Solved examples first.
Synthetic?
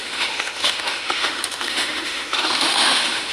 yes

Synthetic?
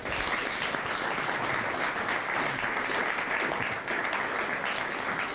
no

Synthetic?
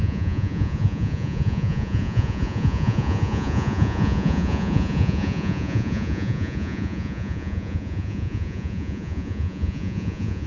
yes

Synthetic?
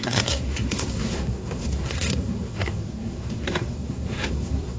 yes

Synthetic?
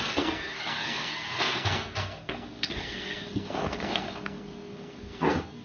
yes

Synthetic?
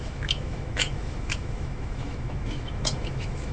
yes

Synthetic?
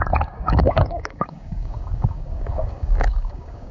yes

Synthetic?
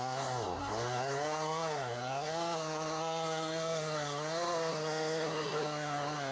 yes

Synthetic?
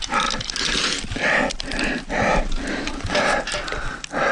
no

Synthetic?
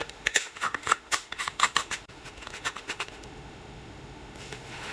yes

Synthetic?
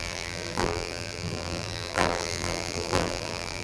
yes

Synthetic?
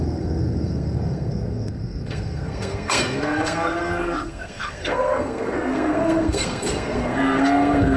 yes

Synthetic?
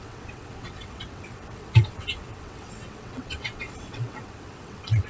yes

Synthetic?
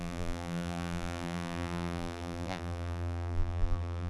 yes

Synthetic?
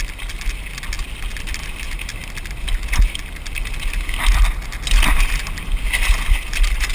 no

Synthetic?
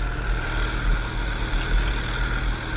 no